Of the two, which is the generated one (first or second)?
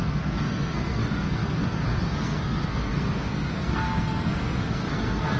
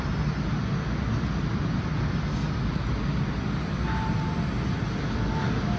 first